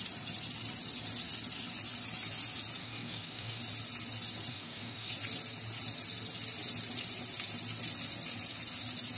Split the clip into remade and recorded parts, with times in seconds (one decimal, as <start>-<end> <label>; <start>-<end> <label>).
0.0-2.8 recorded; 2.8-3.6 remade; 3.6-4.5 recorded; 4.5-5.1 remade; 5.1-9.2 recorded